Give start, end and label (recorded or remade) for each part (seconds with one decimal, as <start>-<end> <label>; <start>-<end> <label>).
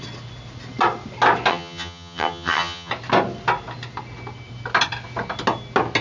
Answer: 0.0-1.5 recorded; 1.5-2.9 remade; 2.9-6.0 recorded